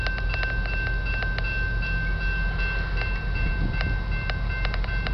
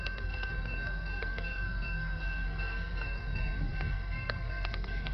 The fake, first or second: second